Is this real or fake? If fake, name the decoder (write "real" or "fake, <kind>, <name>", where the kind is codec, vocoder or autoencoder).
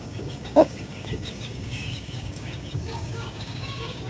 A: fake, codec, DAC